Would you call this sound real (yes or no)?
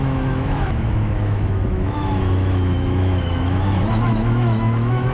no